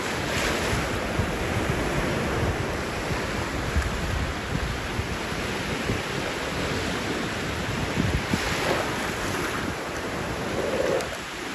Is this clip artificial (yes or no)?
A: no